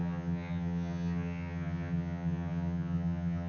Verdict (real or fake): fake